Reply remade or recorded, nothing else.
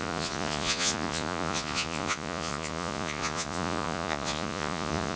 remade